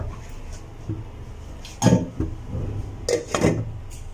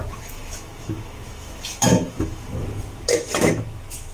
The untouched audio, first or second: first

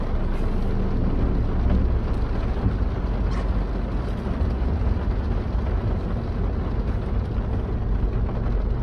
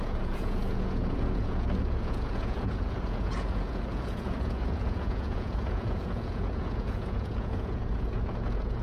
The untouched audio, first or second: first